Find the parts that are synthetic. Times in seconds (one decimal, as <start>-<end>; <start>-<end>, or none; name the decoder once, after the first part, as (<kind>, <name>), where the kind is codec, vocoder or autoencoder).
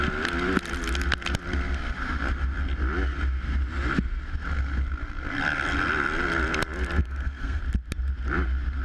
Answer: 7.0-7.6 (codec, SNAC)